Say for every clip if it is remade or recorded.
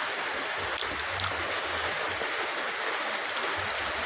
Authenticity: recorded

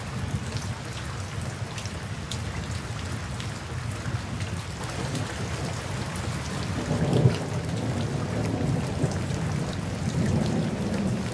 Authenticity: recorded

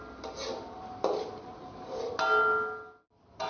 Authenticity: recorded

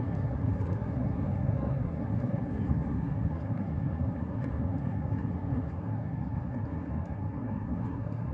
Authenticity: remade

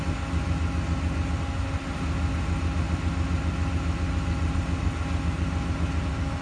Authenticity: recorded